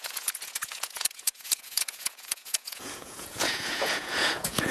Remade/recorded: remade